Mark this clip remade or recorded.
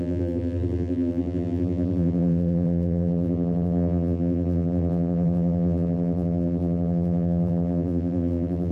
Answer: remade